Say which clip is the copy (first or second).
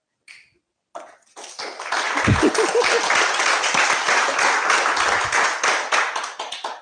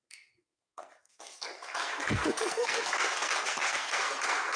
second